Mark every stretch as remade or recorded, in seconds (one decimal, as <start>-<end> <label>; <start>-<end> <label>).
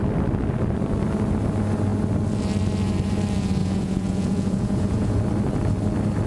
0.0-3.6 recorded; 3.6-5.2 remade; 5.2-6.3 recorded